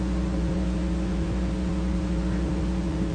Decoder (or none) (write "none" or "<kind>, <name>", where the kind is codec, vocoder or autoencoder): vocoder, Vocos